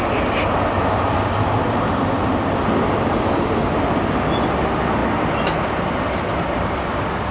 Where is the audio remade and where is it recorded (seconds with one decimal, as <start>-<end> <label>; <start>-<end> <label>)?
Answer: 0.0-7.3 recorded